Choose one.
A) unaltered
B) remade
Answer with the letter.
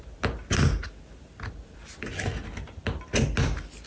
A